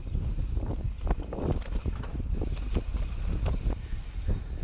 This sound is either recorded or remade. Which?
recorded